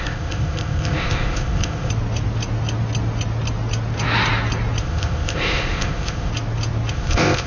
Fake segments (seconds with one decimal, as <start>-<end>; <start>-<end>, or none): 0.0-1.9; 4.8-6.3; 6.9-7.5